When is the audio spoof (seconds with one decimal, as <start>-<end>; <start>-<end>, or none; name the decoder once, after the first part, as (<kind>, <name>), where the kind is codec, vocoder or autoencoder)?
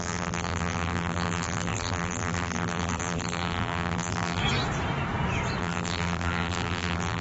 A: 0.0-4.4 (vocoder, BigVGAN v2); 5.6-7.2